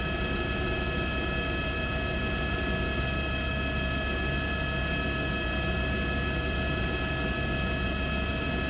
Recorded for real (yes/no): yes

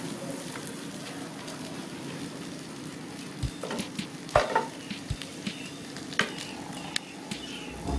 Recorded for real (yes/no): yes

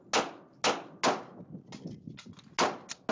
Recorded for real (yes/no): yes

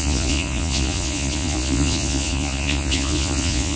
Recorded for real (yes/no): no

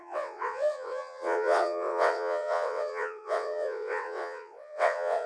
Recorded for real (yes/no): no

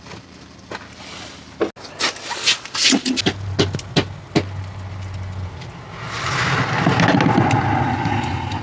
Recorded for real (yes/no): yes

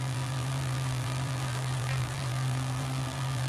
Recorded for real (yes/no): no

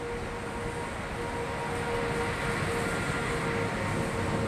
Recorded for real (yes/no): yes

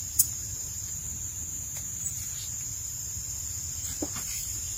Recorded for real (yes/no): no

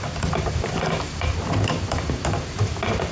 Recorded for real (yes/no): yes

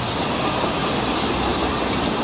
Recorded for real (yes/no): yes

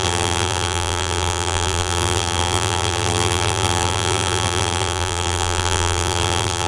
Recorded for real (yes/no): no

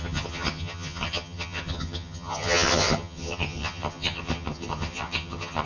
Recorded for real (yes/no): no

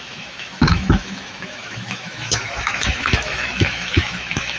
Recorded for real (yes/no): no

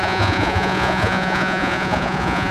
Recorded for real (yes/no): no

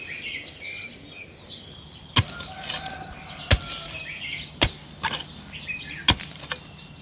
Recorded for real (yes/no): yes